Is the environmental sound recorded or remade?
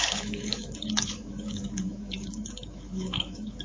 remade